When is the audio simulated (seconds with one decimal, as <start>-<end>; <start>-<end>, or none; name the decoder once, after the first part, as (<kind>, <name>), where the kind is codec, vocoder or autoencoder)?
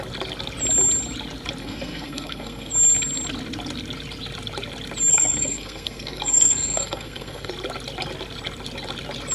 1.6-2.7 (codec, SNAC); 5.1-7.5